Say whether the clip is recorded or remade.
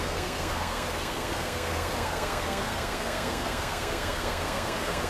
remade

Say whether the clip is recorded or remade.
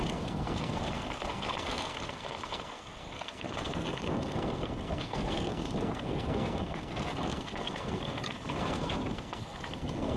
remade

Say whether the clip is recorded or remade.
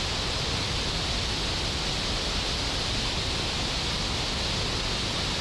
recorded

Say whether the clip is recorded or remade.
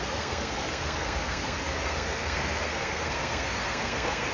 remade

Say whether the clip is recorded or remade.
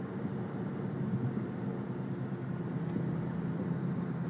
recorded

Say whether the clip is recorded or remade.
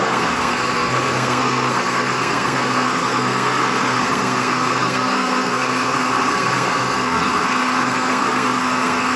remade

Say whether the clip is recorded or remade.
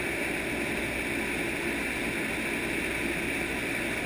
recorded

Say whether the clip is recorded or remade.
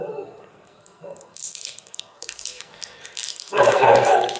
remade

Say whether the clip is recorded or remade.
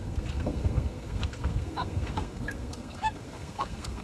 remade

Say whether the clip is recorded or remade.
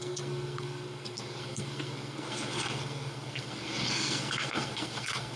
remade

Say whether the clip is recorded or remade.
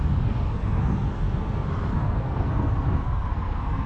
remade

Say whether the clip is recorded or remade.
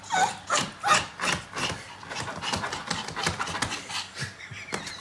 recorded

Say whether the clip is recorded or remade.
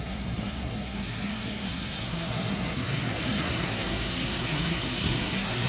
remade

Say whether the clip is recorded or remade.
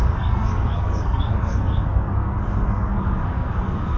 remade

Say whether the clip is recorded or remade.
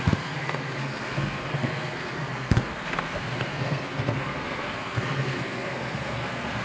remade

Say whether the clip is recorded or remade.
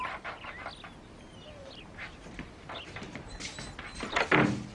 recorded